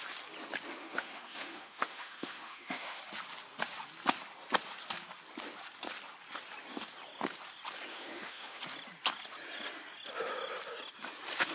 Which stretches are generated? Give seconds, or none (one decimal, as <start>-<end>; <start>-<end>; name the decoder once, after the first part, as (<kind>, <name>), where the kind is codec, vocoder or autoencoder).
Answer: 0.8-3.0 (autoencoder, DAC-VAE); 7.9-8.6